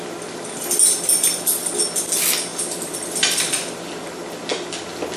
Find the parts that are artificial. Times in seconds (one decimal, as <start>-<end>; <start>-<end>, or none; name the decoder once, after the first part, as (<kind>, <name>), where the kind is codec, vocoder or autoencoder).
none